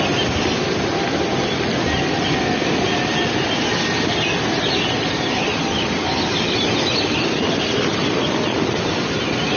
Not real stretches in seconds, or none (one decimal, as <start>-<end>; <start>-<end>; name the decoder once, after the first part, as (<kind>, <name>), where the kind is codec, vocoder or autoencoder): 7.9-9.2 (vocoder, BigVGAN v2)